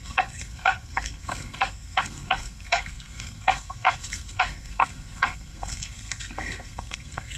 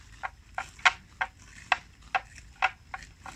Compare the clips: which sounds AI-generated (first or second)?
first